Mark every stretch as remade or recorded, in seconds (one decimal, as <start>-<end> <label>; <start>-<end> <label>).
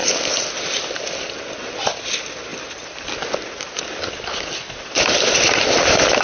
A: 0.0-6.2 recorded